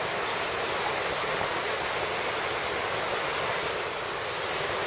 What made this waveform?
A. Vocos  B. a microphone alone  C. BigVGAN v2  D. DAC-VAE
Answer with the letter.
B